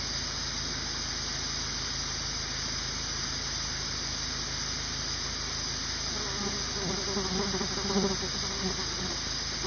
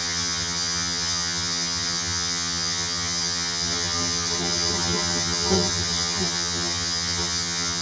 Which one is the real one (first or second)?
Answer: first